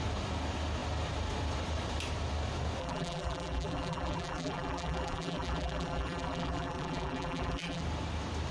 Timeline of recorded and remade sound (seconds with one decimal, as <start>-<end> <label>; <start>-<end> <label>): 0.0-2.8 recorded; 2.8-7.8 remade; 7.8-8.5 recorded